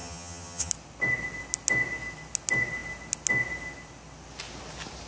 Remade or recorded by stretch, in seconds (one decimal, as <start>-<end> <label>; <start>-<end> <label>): 0.0-0.7 remade; 0.7-5.1 recorded